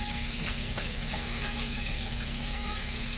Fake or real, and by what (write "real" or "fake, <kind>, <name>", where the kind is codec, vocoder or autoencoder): fake, codec, SNAC